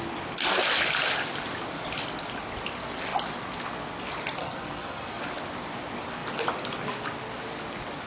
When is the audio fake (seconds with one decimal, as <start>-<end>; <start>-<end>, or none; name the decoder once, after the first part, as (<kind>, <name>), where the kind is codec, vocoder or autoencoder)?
4.4-5.2 (codec, SNAC)